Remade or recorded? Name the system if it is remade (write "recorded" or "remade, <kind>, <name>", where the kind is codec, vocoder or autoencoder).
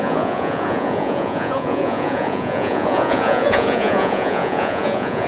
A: remade, vocoder, Vocos